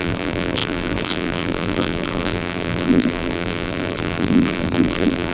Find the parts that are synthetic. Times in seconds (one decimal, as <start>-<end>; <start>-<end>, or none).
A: 0.0-5.3